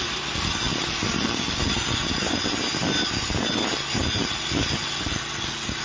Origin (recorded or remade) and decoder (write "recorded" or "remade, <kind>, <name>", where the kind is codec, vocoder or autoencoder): recorded